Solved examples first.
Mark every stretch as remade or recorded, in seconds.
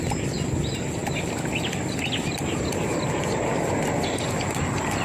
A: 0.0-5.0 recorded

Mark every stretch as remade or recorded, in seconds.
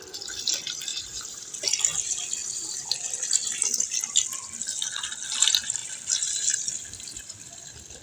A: 0.0-0.9 recorded; 0.9-1.5 remade; 1.5-2.4 recorded; 2.4-2.9 remade; 2.9-8.0 recorded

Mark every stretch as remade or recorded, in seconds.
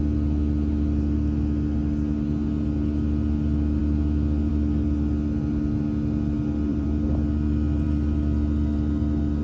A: 0.0-6.7 recorded; 6.7-7.9 remade; 7.9-9.4 recorded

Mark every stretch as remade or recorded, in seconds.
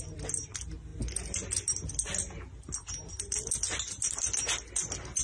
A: 0.0-5.2 recorded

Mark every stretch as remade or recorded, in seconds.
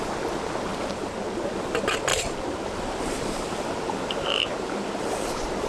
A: 0.0-2.1 recorded; 2.1-5.7 remade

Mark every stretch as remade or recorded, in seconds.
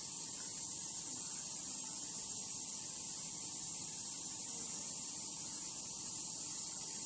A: 0.0-0.5 recorded; 0.5-1.3 remade; 1.3-7.1 recorded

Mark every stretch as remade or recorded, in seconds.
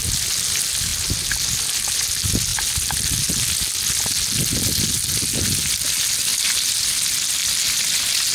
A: 0.0-8.3 recorded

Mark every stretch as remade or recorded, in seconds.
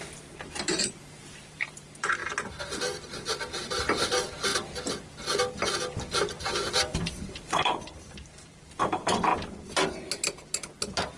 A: 0.0-2.2 remade; 2.2-2.7 recorded; 2.7-4.5 remade; 4.5-5.5 recorded; 5.5-9.3 remade; 9.3-11.2 recorded